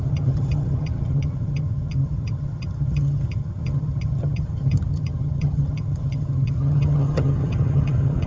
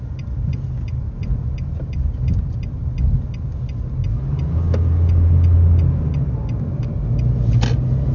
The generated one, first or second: first